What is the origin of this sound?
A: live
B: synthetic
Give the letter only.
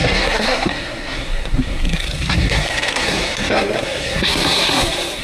B